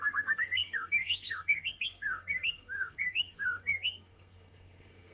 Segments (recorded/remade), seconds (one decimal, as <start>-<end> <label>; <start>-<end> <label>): 0.0-5.1 remade